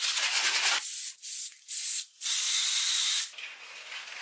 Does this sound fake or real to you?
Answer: real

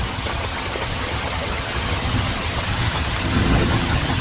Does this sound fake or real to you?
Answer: fake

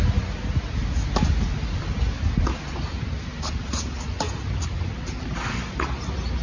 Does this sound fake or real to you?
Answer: real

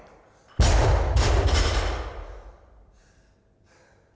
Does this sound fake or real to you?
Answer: real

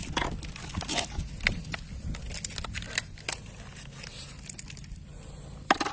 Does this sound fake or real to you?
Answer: real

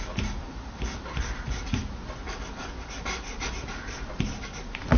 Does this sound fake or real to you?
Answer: real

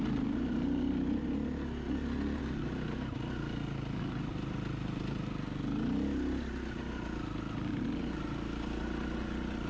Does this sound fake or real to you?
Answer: real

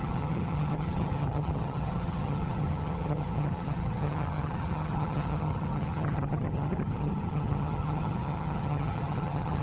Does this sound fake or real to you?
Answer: fake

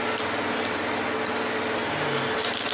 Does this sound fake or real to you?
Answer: real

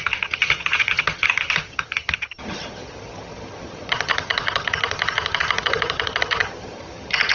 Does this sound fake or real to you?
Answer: fake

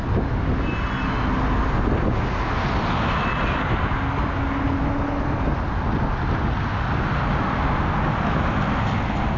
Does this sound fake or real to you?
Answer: real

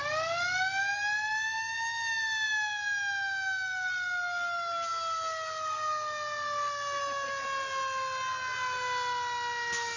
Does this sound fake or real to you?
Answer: real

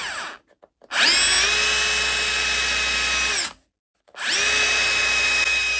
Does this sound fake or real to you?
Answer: real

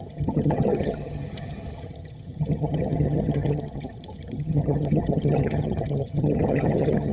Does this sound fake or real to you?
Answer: fake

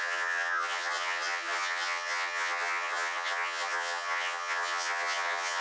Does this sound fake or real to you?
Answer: fake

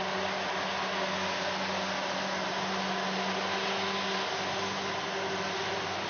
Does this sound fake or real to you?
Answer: real